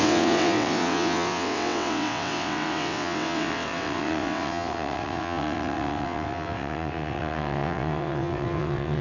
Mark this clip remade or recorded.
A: remade